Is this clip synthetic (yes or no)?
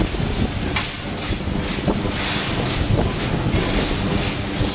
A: no